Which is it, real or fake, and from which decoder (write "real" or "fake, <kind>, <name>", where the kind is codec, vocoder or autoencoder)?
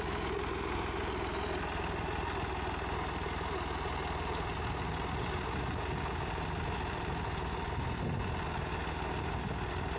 real